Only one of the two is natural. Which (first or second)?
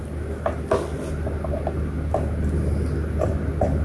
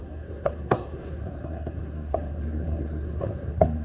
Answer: first